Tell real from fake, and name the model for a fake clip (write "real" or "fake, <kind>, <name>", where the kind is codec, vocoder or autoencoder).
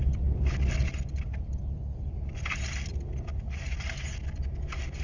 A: real